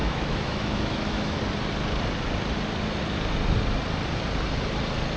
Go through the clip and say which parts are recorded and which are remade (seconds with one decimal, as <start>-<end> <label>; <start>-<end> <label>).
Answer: 0.0-1.4 remade; 1.4-5.2 recorded